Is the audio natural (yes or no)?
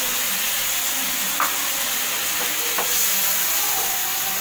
yes